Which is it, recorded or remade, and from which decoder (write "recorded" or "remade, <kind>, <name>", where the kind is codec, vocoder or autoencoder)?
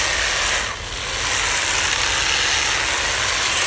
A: recorded